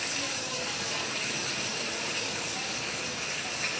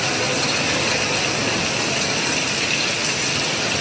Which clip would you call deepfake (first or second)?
first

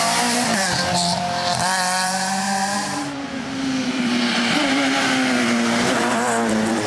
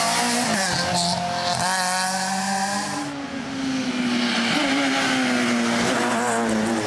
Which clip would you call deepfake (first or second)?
first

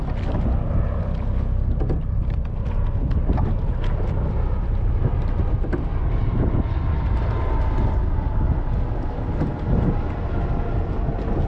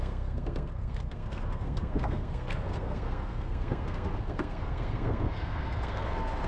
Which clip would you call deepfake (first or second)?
second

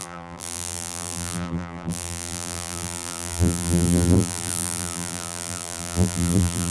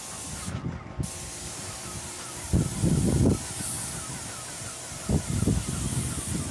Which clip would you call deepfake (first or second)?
first